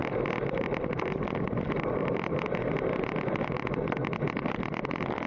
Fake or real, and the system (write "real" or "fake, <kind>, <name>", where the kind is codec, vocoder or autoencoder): real